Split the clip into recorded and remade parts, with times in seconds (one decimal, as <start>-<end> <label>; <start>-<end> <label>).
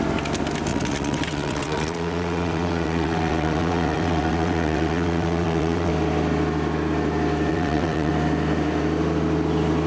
0.0-0.7 recorded; 0.7-5.9 remade; 5.9-7.5 recorded; 7.5-8.1 remade; 8.1-9.9 recorded